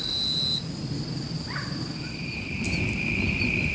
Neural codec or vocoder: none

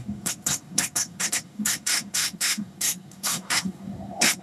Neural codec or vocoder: codec, SNAC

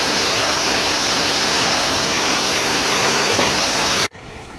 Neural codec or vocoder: codec, SNAC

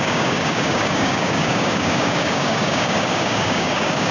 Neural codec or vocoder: codec, DAC